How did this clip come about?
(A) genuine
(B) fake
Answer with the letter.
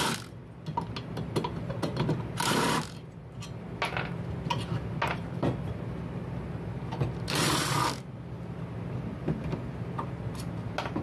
A